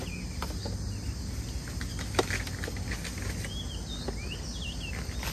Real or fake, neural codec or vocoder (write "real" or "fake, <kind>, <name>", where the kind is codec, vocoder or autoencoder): real